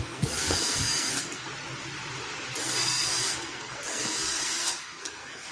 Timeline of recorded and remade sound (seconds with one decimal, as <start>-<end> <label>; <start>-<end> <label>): 0.0-1.5 remade; 1.5-2.6 recorded; 2.6-5.5 remade